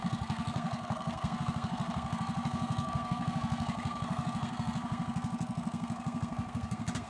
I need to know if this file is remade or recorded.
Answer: remade